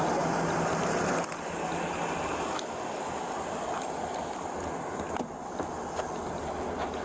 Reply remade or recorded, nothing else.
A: recorded